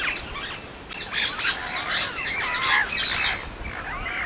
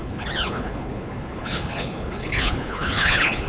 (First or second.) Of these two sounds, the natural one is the first